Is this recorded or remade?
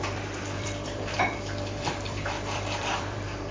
remade